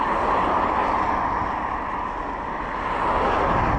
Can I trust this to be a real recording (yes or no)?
yes